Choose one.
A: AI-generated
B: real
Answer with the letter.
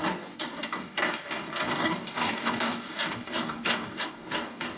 A